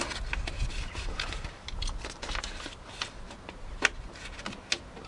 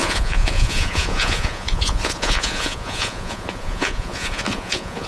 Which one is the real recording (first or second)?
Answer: first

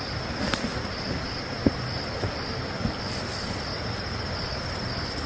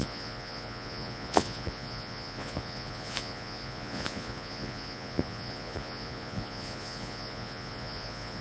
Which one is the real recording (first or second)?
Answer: first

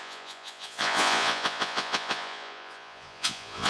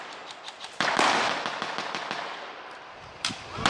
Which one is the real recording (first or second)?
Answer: second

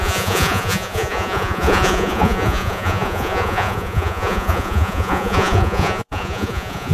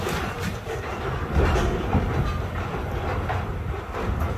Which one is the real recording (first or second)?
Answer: second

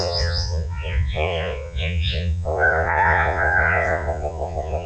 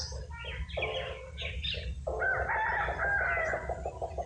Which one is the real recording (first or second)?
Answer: second